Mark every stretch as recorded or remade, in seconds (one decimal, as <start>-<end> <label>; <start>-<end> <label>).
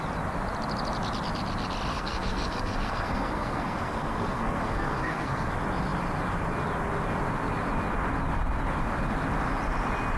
0.0-1.9 recorded; 1.9-5.5 remade; 5.5-10.2 recorded